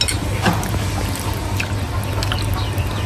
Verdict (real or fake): real